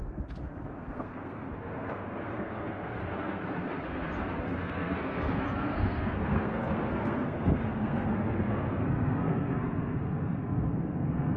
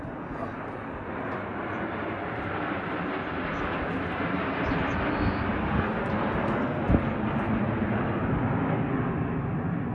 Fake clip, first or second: first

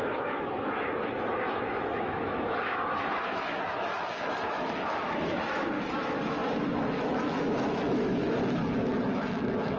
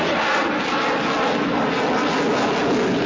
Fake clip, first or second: first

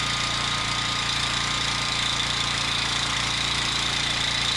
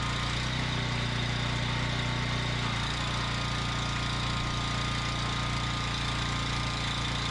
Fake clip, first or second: first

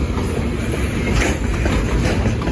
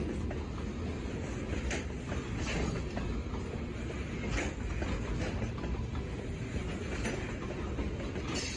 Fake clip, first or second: first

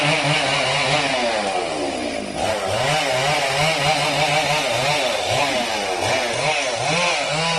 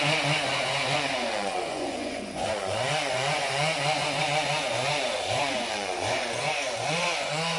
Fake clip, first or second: second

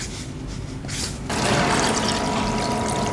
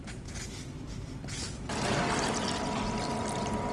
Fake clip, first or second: second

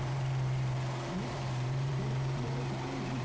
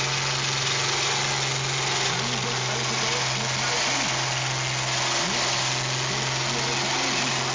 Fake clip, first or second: first